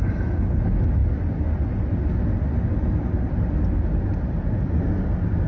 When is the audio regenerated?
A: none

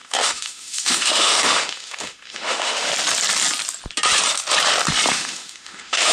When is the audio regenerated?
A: 0.0-2.9 (autoencoder, DAC-VAE); 5.1-6.1

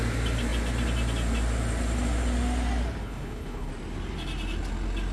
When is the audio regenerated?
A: 3.0-3.7 (codec, HILCodec)

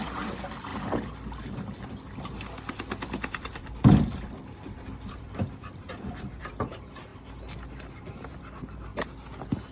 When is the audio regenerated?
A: 0.0-0.7 (vocoder, BigVGAN v2); 5.1-8.9

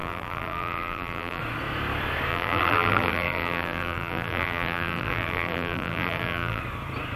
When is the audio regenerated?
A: 0.0-1.4 (vocoder, BigVGAN v2); 2.3-6.6

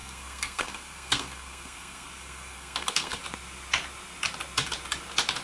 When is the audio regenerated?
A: 0.0-3.2 (codec, SNAC)

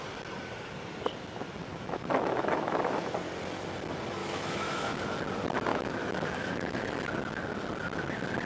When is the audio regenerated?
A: 1.7-2.8 (autoencoder, DAC-VAE); 4.2-5.0; 5.7-6.9

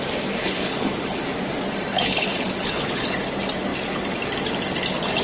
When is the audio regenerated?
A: 0.4-1.2 (codec, HILCodec); 1.9-3.1